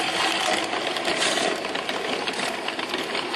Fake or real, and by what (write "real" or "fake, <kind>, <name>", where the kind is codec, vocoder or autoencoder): real